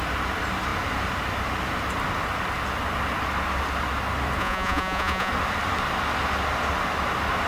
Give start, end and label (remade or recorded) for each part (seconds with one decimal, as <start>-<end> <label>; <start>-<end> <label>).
0.0-4.4 recorded; 4.4-5.3 remade; 5.3-7.5 recorded